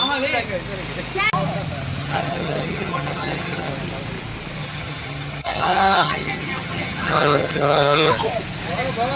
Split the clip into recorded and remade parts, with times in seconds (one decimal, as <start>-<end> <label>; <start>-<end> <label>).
0.0-2.0 recorded; 2.0-3.7 remade; 3.7-4.6 recorded; 4.6-8.1 remade; 8.1-9.2 recorded

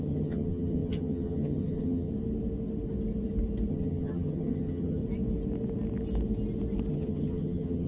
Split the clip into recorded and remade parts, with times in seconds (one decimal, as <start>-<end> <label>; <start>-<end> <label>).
0.0-2.1 remade; 2.1-3.7 recorded; 3.7-5.0 remade; 5.0-6.9 recorded; 6.9-7.9 remade

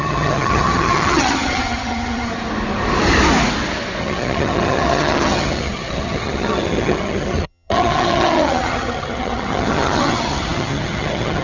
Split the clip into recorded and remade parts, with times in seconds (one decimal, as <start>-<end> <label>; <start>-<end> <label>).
0.0-2.3 remade; 2.3-4.0 recorded; 4.0-11.4 remade